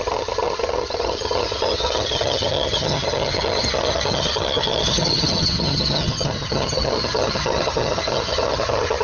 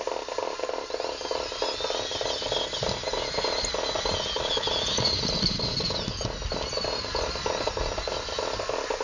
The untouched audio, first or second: second